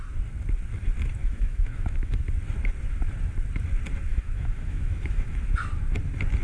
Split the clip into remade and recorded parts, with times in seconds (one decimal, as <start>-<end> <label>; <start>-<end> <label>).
0.0-1.2 recorded; 1.2-2.2 remade; 2.2-4.1 recorded; 4.1-5.4 remade; 5.4-6.4 recorded